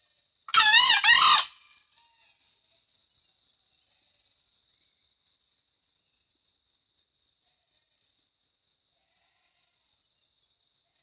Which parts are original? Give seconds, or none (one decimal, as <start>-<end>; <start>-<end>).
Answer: 0.0-11.0